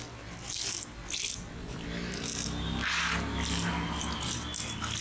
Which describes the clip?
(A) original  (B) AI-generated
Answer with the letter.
A